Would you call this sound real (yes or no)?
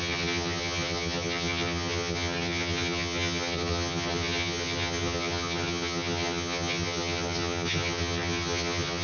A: no